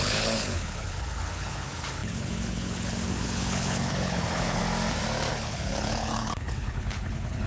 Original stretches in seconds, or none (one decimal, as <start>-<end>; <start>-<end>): 4.6-5.3